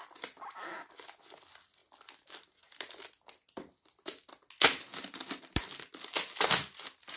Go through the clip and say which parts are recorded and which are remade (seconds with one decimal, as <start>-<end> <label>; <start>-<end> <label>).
0.0-7.2 recorded